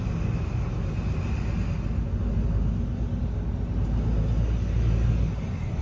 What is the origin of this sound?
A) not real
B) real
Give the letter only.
B